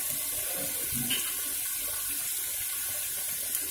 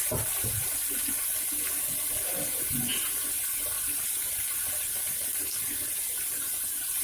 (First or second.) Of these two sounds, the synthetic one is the second